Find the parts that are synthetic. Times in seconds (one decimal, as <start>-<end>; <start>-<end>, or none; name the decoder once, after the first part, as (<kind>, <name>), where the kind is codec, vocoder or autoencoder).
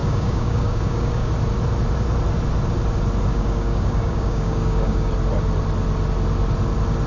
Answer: 0.0-1.3 (codec, DAC); 3.3-5.1